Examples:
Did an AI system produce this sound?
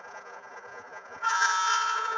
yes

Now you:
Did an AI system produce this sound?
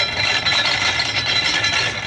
no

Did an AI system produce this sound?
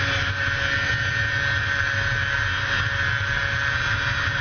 no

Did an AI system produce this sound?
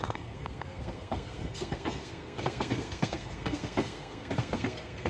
yes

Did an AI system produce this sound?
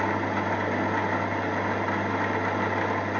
no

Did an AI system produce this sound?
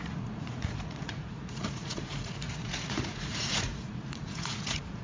yes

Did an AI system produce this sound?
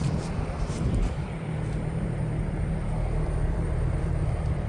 yes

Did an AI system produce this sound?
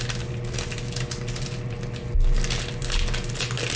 no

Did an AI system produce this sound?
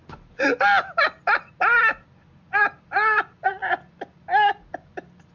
no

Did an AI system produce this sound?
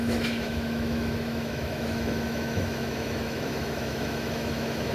yes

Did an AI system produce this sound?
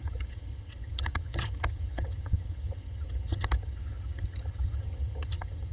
yes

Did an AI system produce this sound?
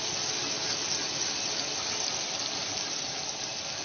no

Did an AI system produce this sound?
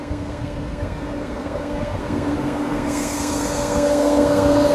yes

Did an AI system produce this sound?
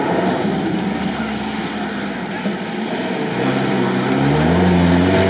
no